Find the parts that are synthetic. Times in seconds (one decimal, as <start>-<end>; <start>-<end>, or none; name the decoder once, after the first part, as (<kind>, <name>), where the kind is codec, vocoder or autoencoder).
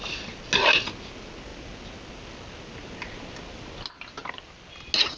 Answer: none